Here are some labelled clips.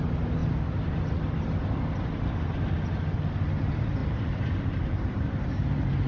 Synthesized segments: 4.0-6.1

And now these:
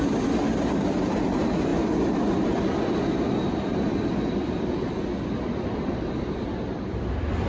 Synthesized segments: none

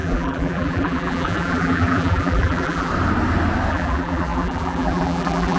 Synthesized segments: 0.0-2.9; 3.7-5.6